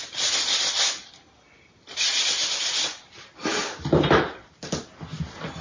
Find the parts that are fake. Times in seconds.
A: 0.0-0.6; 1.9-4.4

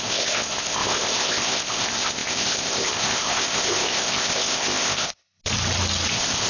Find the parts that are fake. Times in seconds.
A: 0.0-5.4; 6.1-6.5

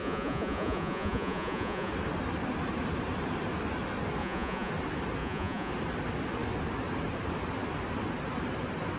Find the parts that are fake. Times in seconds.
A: 0.0-1.9; 4.2-4.7; 5.2-5.7

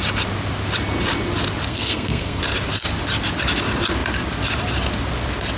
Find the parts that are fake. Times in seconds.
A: 1.7-2.4